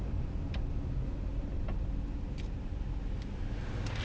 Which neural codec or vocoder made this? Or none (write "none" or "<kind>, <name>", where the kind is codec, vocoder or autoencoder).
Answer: none